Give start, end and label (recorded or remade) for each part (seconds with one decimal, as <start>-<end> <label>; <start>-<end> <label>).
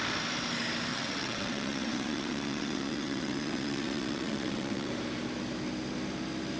0.0-0.9 recorded; 0.9-4.9 remade; 4.9-6.6 recorded